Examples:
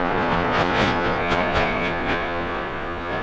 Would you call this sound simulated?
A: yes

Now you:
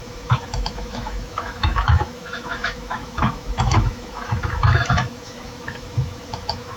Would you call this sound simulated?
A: yes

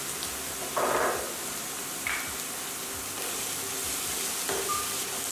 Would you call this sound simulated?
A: no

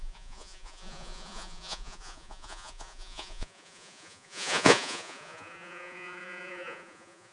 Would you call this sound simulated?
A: yes